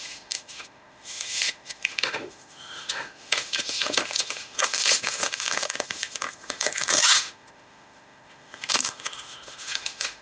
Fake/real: fake